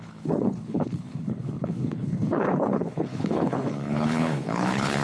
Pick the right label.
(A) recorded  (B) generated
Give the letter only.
B